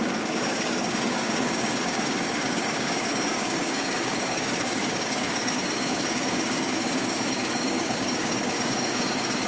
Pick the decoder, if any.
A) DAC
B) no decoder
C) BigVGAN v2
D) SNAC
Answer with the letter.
A